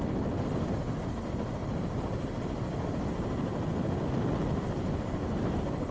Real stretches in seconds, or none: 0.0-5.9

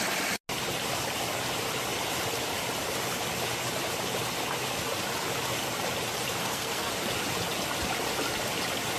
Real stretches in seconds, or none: 0.0-6.4; 6.9-9.0

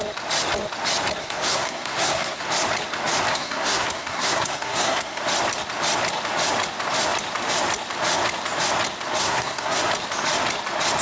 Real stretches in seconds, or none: 0.0-1.2; 2.4-3.3; 5.2-9.2; 9.8-11.0